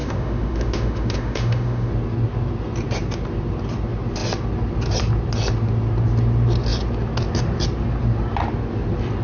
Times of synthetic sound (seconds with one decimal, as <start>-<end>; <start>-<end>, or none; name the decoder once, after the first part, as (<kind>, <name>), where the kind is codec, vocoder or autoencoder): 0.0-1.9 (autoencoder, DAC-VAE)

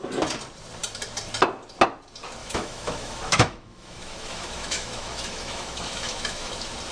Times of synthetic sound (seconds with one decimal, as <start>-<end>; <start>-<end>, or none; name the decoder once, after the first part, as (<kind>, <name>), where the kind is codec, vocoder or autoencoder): 2.4-6.5 (autoencoder, DAC-VAE)

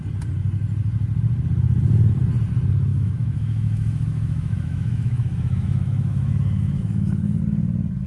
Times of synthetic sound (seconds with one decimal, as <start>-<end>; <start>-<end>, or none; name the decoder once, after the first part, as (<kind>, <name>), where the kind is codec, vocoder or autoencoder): 2.9-7.4 (autoencoder, DAC-VAE)

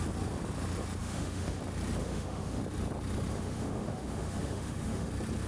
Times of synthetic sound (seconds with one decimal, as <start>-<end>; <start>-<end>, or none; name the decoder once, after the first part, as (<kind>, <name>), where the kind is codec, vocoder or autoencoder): 1.0-1.6 (autoencoder, DAC-VAE); 2.0-2.6; 3.3-5.1

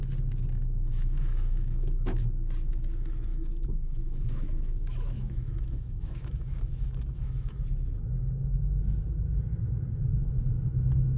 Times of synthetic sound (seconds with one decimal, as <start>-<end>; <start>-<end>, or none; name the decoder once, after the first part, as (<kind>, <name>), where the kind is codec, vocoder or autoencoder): 0.9-2.2 (autoencoder, DAC-VAE); 3.3-7.6

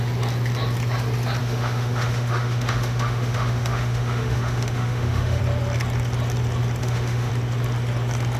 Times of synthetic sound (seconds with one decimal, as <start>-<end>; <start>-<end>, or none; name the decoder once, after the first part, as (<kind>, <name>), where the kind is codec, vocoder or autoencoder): 1.4-5.4 (autoencoder, DAC-VAE); 6.8-7.3